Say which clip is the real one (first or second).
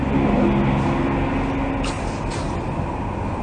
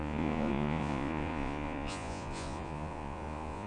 first